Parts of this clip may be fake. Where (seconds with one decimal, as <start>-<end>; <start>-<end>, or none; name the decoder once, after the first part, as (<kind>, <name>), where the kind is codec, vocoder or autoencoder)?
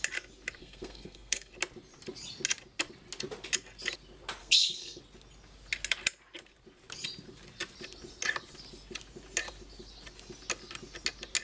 0.6-1.5 (codec, SNAC); 4.4-5.0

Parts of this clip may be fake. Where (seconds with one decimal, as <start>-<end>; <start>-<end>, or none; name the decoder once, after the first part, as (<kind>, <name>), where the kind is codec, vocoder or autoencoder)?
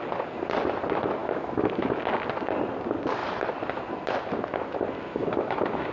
1.2-2.0 (autoencoder, DAC-VAE); 5.1-5.9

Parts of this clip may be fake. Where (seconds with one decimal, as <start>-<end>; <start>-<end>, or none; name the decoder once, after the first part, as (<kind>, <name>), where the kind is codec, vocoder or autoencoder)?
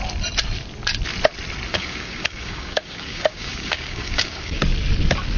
1.7-4.6 (codec, DAC)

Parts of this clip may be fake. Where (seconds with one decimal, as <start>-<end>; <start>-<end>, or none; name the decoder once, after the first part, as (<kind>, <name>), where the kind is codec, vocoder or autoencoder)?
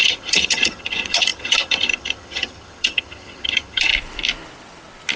0.0-3.9 (vocoder, HiFi-GAN)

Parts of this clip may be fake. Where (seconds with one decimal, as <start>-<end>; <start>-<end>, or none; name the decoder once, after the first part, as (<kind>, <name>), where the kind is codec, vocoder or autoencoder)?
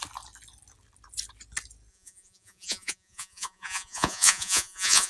1.9-5.1 (vocoder, Vocos)